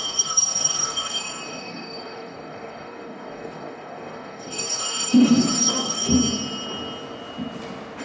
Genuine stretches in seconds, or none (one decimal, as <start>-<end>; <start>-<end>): 6.1-8.0